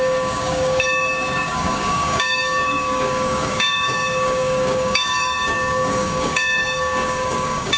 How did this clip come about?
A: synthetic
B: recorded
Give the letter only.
A